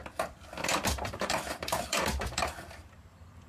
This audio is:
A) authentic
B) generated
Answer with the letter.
B